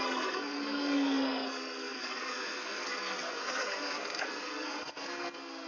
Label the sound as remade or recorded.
remade